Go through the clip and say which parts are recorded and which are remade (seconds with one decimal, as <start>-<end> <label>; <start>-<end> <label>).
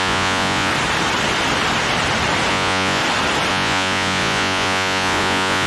0.0-0.7 remade; 0.7-2.5 recorded; 2.5-3.0 remade; 3.0-3.5 recorded; 3.5-5.7 remade